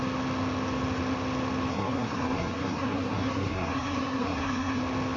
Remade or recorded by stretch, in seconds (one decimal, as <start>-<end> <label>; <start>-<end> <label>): 0.0-1.7 recorded; 1.7-4.8 remade; 4.8-5.2 recorded